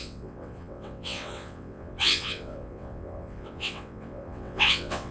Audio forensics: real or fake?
fake